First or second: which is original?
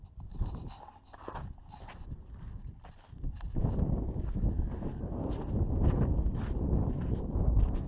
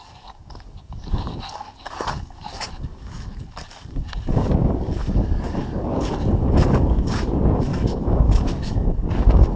first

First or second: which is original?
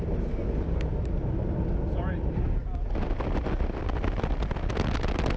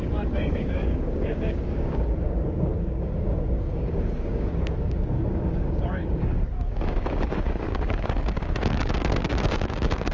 first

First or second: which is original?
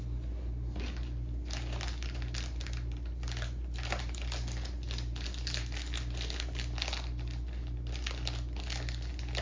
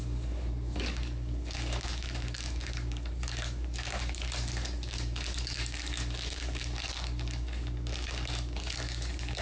first